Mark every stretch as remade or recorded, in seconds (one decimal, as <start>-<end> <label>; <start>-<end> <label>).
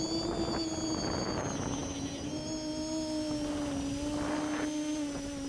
0.0-5.5 recorded